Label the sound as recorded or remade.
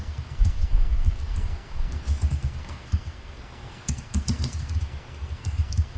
remade